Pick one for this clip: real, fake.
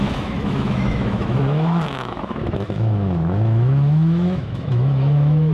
fake